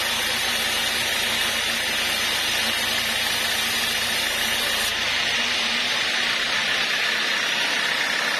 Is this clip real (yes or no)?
yes